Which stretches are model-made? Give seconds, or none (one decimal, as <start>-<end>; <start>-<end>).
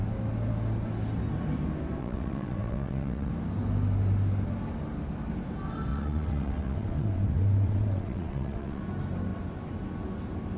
2.0-3.3; 5.9-8.8